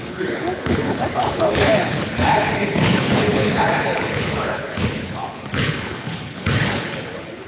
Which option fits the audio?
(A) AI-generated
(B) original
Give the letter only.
A